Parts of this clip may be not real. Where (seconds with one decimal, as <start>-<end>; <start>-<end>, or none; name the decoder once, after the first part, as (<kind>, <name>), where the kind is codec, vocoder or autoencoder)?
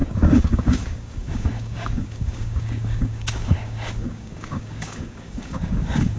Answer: 0.0-6.2 (codec, DAC)